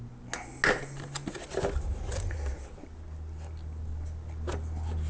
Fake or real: real